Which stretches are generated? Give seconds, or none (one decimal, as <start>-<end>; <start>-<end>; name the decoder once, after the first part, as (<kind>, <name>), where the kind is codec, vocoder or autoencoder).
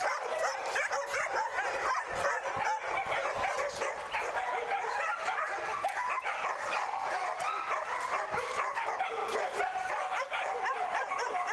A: none